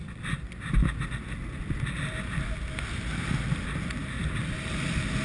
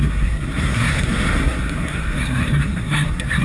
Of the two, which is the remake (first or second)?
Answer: second